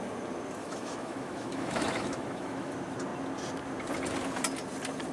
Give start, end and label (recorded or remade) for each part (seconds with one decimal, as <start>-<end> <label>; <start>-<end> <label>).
0.0-0.6 recorded; 0.6-2.7 remade; 2.7-5.1 recorded